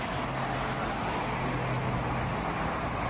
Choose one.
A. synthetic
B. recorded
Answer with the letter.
B